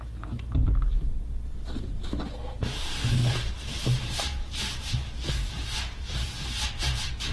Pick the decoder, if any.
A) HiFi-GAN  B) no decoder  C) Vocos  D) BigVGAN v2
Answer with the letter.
D